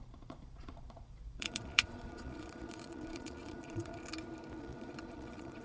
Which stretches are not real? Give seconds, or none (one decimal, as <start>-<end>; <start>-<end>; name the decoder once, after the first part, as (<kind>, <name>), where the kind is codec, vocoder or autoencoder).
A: 0.0-3.9 (vocoder, Vocos); 4.6-5.6